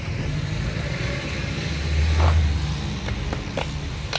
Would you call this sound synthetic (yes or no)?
no